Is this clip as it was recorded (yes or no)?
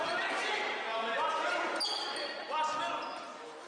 yes